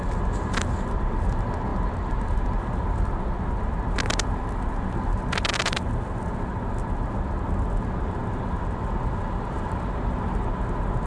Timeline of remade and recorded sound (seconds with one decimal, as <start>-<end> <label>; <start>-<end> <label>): 0.0-1.7 recorded; 1.7-3.5 remade; 3.5-11.1 recorded